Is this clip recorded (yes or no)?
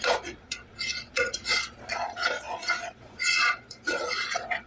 no